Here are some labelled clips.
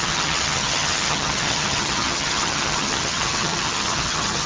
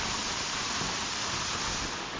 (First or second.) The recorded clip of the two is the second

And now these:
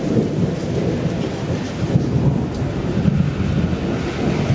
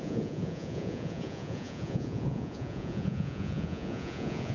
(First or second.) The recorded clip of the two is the first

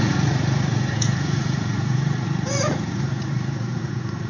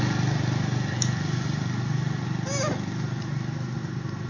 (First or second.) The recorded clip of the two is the second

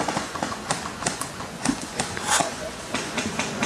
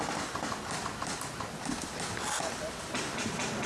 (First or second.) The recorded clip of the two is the second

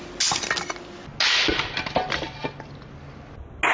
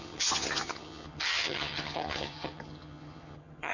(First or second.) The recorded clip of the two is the first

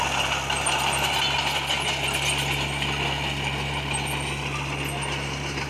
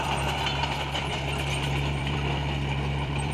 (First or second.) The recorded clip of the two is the first